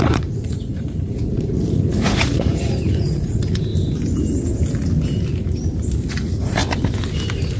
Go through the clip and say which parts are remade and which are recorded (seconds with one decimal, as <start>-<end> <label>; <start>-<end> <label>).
0.0-3.7 remade; 3.7-6.1 recorded; 6.1-6.6 remade; 6.6-7.6 recorded